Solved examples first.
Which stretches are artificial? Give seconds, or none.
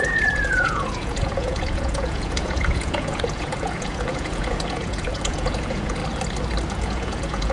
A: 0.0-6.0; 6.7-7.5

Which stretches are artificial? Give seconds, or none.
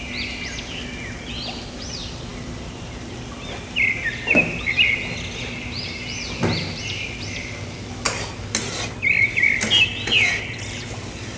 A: none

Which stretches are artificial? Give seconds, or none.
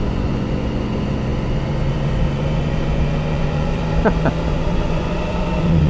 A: 0.0-3.8; 4.5-5.9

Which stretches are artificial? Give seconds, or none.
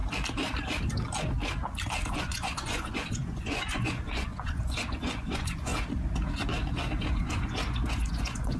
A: 2.1-5.7; 7.1-8.6